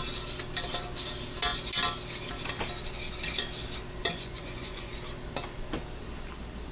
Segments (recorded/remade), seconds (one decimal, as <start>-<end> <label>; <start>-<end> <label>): 0.0-4.0 recorded; 4.0-4.9 remade; 4.9-6.7 recorded